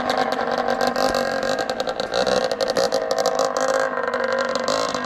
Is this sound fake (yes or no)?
no